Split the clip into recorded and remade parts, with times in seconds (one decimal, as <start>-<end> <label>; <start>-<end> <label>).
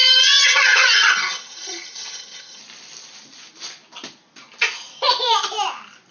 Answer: 0.0-2.6 remade; 2.6-6.1 recorded